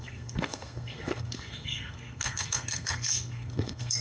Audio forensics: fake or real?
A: fake